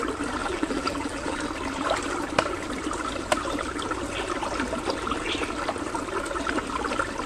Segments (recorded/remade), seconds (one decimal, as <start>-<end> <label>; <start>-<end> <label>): 0.0-0.4 recorded; 0.4-1.4 remade; 1.4-7.3 recorded